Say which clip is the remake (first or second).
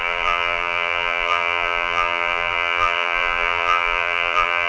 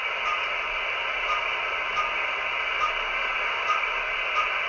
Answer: first